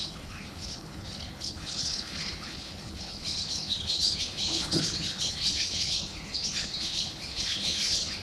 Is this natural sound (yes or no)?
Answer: no